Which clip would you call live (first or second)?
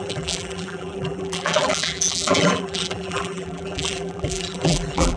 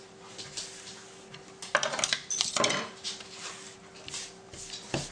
second